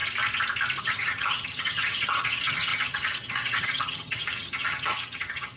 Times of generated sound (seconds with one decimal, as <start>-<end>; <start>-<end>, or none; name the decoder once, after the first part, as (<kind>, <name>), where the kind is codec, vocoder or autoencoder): 0.8-5.6 (vocoder, HiFi-GAN)